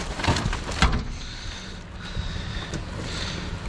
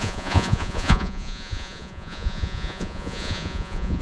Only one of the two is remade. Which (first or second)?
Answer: second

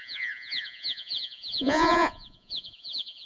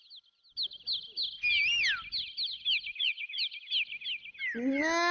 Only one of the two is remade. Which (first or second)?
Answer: first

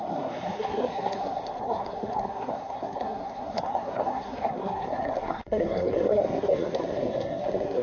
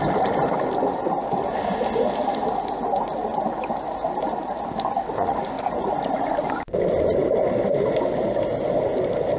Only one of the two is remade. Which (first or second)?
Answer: first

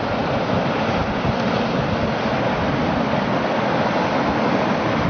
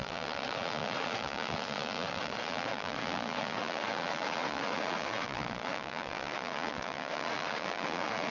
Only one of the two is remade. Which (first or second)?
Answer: second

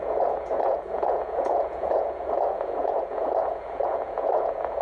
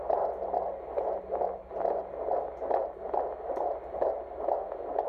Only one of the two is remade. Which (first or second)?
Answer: first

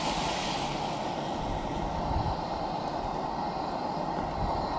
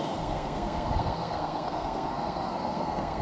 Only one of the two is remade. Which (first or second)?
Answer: second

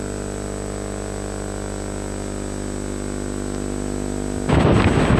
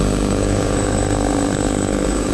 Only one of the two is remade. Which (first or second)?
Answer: second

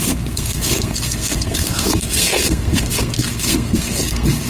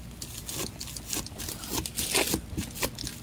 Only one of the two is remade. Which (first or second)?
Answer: first